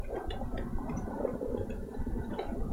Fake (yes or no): yes